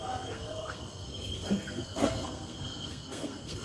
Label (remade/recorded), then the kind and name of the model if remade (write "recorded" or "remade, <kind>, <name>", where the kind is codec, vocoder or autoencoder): remade, codec, SNAC